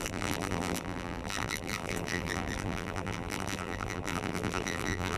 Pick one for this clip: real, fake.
fake